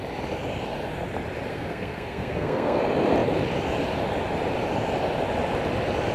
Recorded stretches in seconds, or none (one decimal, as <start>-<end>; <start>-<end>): 0.0-1.5; 2.8-6.1